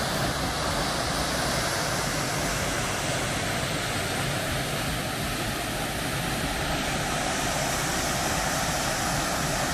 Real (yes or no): yes